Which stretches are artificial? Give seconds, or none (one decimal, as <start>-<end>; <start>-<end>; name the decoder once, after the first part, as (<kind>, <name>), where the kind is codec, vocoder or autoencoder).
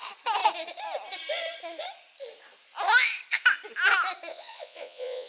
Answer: 4.3-5.3 (vocoder, Vocos)